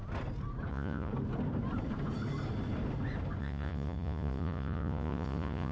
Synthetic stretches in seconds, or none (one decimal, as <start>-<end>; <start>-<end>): 0.7-1.1; 3.4-5.7